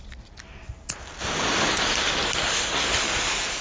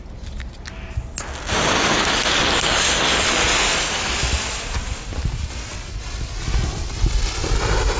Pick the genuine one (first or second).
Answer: second